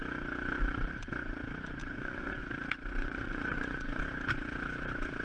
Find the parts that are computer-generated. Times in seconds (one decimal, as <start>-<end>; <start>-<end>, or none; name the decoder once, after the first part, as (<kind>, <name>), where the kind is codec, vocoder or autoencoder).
1.8-2.4 (vocoder, Vocos); 3.0-4.0